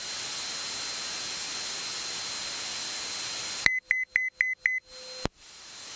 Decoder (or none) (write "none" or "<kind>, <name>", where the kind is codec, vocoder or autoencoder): none